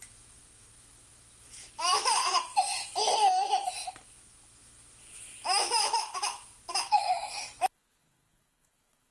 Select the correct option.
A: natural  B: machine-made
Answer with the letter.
B